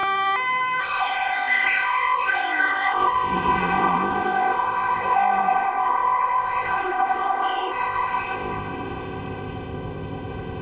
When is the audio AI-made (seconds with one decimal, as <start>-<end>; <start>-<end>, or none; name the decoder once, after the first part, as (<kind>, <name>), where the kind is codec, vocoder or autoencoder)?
0.8-10.6 (codec, ZipCodec)